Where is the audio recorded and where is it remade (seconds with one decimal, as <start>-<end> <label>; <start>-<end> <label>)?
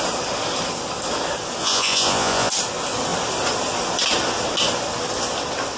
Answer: 0.0-1.6 recorded; 1.6-2.5 remade; 2.5-5.8 recorded